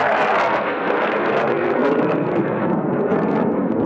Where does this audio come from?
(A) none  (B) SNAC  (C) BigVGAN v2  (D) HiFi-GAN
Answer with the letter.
B